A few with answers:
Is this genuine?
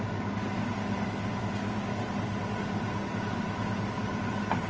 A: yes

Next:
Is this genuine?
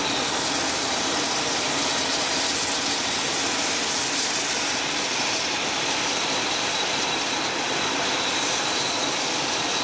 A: yes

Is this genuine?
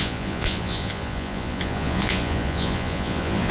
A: no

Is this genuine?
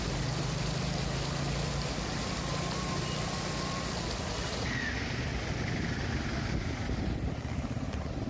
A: yes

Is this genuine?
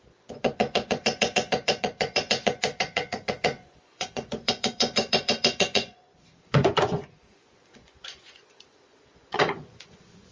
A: no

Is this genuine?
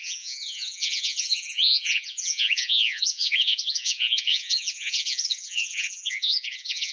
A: no